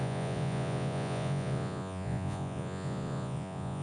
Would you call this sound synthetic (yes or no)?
yes